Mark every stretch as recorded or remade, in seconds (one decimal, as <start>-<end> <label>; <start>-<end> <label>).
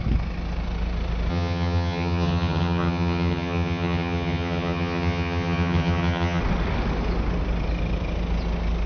0.0-1.3 recorded; 1.3-6.4 remade; 6.4-8.9 recorded